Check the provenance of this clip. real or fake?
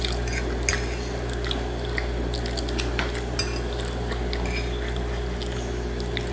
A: real